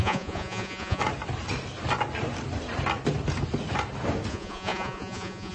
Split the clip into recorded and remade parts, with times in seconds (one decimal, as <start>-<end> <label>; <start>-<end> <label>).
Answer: 0.0-1.0 remade; 1.0-4.3 recorded; 4.3-5.5 remade